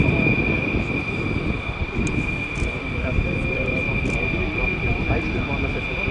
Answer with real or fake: real